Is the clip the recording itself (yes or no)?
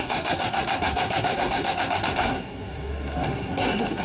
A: no